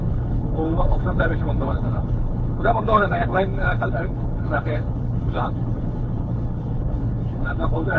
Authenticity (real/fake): fake